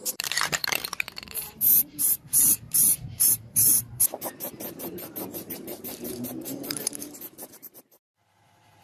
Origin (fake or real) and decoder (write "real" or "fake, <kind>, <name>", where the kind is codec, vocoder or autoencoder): fake, vocoder, BigVGAN v2